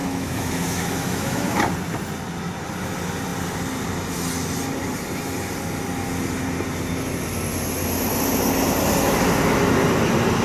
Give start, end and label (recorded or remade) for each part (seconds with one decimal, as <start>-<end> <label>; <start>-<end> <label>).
0.0-1.6 remade; 1.6-10.4 recorded